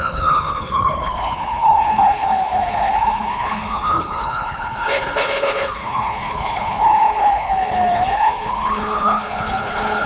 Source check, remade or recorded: remade